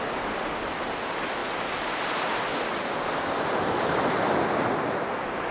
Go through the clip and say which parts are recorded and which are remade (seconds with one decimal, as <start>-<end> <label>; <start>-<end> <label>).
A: 0.0-5.5 recorded